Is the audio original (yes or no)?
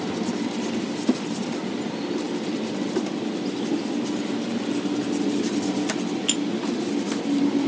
yes